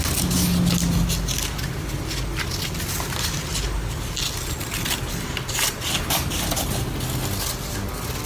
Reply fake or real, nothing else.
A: real